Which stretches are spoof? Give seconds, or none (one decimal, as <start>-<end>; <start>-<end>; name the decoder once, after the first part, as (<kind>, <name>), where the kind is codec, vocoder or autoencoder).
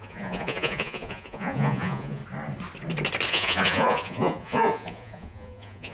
0.0-2.2 (vocoder, Vocos); 3.3-5.9